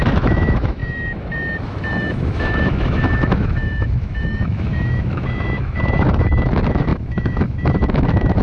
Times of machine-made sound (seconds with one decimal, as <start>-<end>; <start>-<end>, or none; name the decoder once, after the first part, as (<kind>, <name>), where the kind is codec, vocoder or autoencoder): 0.0-8.4 (autoencoder, DAC-VAE)